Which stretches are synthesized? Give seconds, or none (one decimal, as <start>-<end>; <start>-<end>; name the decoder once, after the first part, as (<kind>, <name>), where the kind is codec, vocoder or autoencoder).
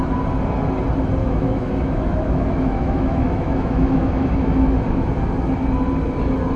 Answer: 1.2-5.2 (autoencoder, DAC-VAE)